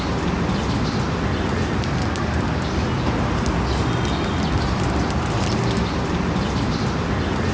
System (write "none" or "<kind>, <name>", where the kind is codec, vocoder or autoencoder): none